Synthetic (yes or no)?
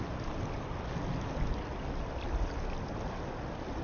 no